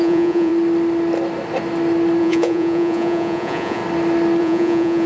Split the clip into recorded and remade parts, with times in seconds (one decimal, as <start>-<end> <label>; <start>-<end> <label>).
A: 0.0-0.5 remade; 0.5-2.2 recorded; 2.2-3.8 remade; 3.8-4.4 recorded; 4.4-5.1 remade